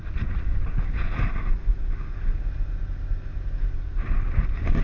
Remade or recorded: recorded